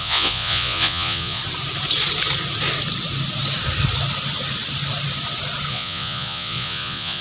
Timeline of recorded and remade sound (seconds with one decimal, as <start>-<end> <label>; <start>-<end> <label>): 0.0-1.4 remade; 1.4-5.7 recorded; 5.7-7.2 remade